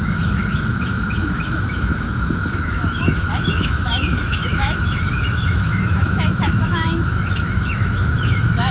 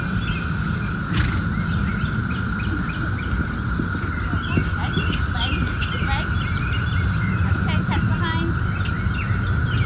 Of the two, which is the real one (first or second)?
second